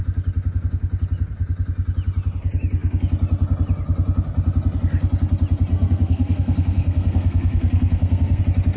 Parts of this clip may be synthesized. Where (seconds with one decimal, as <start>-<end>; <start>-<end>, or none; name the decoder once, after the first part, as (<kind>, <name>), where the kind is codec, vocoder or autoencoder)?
5.7-8.4 (codec, SNAC)